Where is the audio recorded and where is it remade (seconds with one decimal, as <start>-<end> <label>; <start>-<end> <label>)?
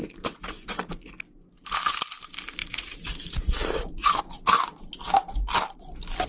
0.0-0.5 remade; 0.5-2.6 recorded; 2.6-4.2 remade; 4.2-6.3 recorded